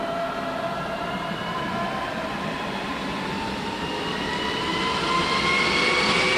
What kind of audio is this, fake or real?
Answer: real